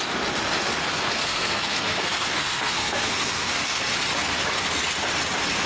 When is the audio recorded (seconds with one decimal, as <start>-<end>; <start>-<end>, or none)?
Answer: 0.0-0.8; 3.8-5.7